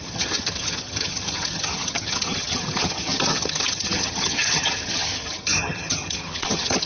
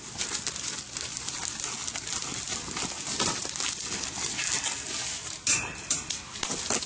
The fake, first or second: first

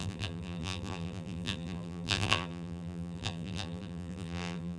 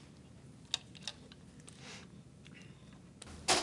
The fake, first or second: first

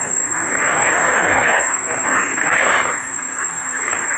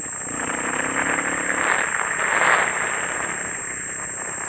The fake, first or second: first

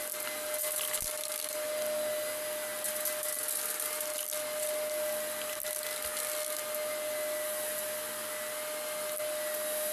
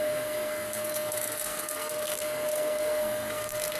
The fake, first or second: second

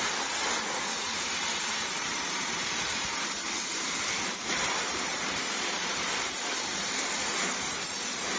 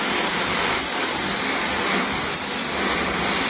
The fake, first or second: first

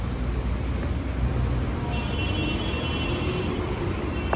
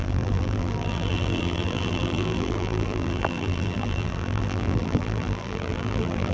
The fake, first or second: second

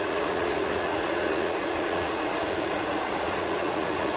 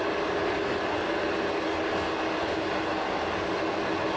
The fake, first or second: first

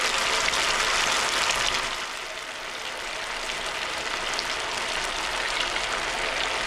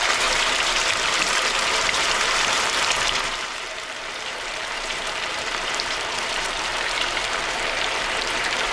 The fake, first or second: second